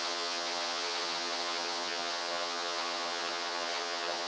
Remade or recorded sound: remade